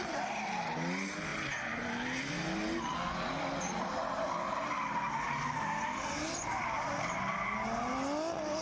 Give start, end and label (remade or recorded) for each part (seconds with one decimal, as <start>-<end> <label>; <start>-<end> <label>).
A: 0.0-8.6 recorded